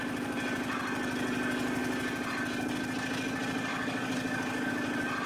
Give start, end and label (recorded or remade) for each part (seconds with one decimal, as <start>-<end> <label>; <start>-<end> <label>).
0.0-3.7 recorded; 3.7-4.7 remade; 4.7-5.3 recorded